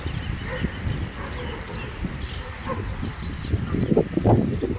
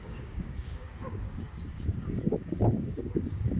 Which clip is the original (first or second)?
first